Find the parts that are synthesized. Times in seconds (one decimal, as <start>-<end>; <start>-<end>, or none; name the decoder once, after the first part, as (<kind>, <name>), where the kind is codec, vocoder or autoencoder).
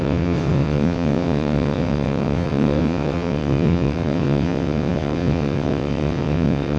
0.0-6.8 (vocoder, WaveNeXt)